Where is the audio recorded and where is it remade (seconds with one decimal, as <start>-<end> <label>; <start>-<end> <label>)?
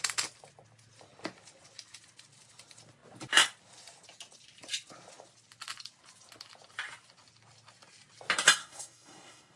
0.0-8.6 recorded; 8.6-9.6 remade